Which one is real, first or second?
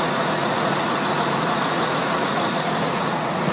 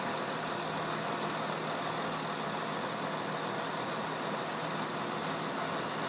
second